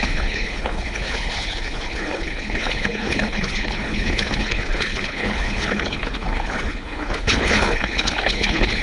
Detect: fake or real fake